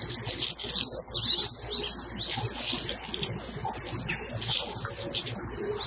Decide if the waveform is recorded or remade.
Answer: recorded